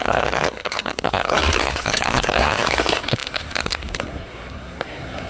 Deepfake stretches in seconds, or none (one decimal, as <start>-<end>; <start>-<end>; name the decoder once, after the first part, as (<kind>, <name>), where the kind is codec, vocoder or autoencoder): 0.0-5.3 (codec, SNAC)